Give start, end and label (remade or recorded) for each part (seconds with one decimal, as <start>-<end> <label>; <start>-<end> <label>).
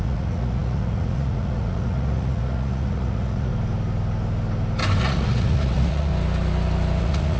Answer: 0.0-3.5 remade; 3.5-5.0 recorded; 5.0-6.1 remade; 6.1-7.0 recorded; 7.0-7.4 remade